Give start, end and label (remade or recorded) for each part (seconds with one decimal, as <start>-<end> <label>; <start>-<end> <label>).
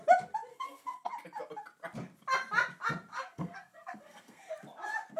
0.0-0.5 recorded; 0.5-1.1 remade; 1.1-3.1 recorded; 3.1-4.5 remade; 4.5-5.2 recorded